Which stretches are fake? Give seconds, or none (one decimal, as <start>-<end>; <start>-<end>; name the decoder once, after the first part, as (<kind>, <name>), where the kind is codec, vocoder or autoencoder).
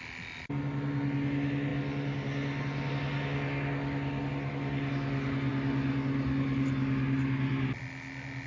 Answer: none